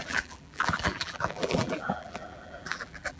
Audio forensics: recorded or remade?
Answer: remade